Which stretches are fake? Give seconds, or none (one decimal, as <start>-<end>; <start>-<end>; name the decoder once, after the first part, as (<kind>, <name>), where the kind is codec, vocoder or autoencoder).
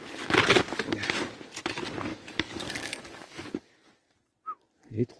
2.1-3.8 (codec, DAC)